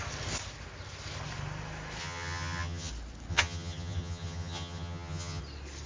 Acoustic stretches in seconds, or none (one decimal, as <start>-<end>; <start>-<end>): 0.0-2.0; 2.9-3.3; 5.4-5.9